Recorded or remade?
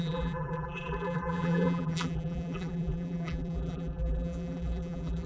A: remade